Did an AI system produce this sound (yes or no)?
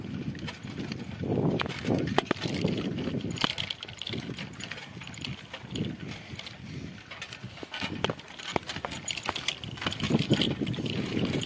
no